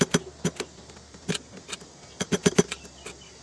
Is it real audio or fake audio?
real